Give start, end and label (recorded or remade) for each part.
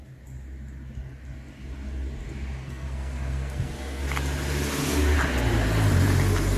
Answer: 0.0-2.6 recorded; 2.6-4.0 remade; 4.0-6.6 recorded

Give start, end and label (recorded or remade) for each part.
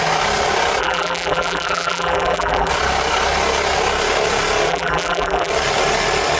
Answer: 0.0-0.8 recorded; 0.8-2.7 remade; 2.7-4.7 recorded; 4.7-5.5 remade; 5.5-6.4 recorded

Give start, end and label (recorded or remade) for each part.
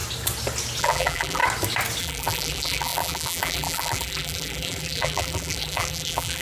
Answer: 0.0-0.8 recorded; 0.8-1.4 remade; 1.4-2.0 recorded; 2.0-6.4 remade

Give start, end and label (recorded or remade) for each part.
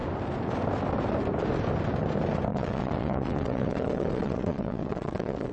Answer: 0.0-2.5 recorded; 2.5-5.5 remade